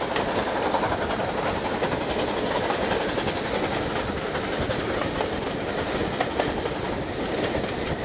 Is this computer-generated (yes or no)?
no